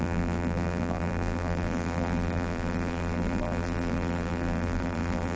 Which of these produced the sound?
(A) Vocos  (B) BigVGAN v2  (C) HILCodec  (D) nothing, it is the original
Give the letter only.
B